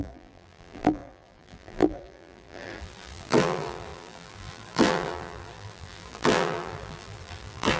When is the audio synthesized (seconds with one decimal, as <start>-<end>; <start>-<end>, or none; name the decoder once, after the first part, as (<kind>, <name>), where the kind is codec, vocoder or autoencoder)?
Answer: 0.0-7.8 (vocoder, BigVGAN v2)